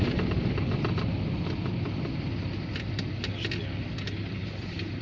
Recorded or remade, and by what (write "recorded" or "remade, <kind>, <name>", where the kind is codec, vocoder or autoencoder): recorded